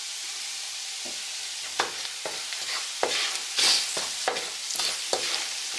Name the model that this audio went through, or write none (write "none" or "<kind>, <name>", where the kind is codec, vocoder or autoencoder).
none